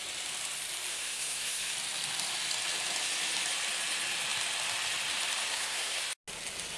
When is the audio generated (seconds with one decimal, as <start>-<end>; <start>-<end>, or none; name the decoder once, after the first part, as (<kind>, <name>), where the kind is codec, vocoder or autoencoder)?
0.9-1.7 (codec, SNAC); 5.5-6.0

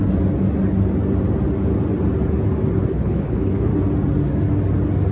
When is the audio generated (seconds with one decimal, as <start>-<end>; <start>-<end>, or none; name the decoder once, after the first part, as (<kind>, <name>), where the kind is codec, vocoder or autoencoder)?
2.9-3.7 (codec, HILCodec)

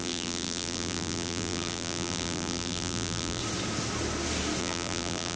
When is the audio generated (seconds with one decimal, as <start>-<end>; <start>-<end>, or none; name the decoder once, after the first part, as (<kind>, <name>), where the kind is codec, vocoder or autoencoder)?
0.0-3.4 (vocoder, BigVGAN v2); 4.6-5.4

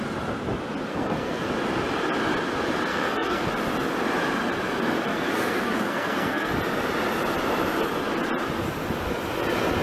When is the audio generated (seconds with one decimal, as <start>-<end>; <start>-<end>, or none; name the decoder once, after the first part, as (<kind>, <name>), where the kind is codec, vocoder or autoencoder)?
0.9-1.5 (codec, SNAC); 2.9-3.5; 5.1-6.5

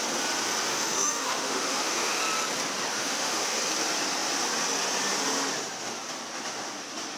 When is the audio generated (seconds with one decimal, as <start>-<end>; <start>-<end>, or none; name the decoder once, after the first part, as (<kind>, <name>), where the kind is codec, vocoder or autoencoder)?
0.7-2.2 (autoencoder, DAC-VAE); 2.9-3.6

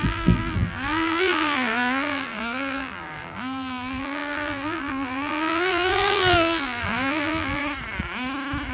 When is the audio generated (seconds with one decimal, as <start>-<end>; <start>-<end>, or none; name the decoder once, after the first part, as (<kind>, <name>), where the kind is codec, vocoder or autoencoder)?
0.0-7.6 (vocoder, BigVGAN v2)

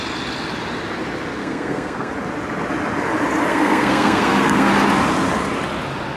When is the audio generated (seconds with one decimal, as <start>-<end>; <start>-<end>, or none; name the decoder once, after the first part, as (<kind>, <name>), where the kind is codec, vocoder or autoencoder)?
1.4-2.1 (codec, SNAC); 3.5-4.7

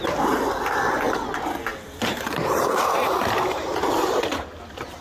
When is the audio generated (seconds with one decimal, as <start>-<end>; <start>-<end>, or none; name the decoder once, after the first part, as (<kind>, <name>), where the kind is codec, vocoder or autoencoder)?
1.7-4.1 (vocoder, BigVGAN v2)